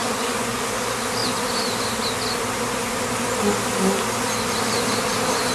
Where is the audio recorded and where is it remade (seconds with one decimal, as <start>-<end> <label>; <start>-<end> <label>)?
0.0-0.7 remade; 0.7-5.5 recorded

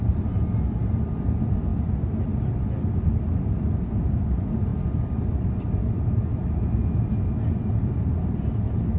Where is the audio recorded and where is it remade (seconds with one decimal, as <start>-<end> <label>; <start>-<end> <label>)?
0.0-9.0 recorded

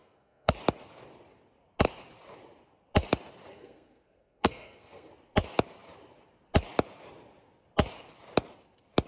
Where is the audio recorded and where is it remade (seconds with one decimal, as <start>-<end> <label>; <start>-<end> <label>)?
0.0-0.5 remade; 0.5-3.5 recorded; 3.5-5.1 remade; 5.1-9.1 recorded

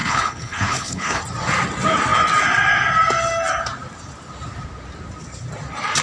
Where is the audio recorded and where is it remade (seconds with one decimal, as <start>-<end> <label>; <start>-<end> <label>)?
0.0-1.2 remade; 1.2-6.0 recorded